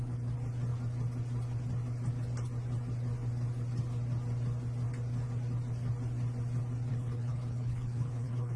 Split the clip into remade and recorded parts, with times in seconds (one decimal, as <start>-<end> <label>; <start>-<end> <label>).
0.0-6.9 recorded; 6.9-8.6 remade